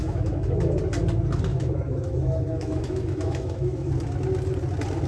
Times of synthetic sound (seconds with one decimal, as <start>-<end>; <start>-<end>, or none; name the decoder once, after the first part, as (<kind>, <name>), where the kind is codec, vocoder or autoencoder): 0.0-0.8 (autoencoder, DAC-VAE); 1.5-3.9